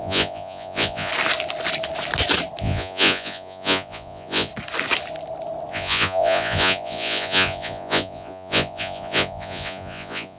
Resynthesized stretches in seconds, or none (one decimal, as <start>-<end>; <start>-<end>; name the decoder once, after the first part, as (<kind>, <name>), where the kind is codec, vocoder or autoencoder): 0.0-1.1 (vocoder, Vocos); 2.6-4.5; 5.7-10.4

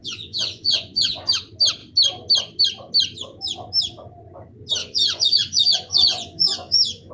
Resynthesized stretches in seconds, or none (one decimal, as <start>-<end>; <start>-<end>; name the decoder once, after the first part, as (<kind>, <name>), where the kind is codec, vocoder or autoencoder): 0.0-1.3 (vocoder, Vocos); 4.8-7.1